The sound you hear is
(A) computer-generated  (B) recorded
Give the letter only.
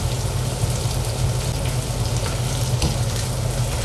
B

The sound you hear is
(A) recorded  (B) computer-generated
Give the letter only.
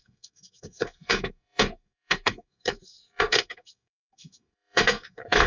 B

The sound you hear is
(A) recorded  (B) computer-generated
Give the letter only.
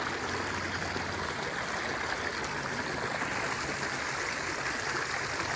A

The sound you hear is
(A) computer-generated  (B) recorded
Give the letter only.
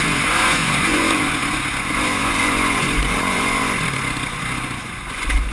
A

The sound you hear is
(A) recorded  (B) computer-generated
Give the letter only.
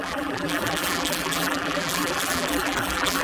B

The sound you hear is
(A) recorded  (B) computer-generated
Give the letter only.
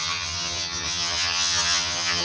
B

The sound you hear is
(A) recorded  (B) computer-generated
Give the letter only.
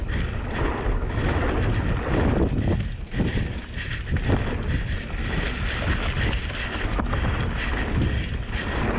A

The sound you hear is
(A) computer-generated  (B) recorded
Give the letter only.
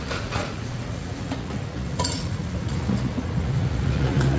A